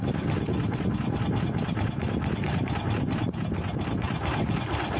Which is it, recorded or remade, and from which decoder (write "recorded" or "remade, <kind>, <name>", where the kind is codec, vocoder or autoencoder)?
recorded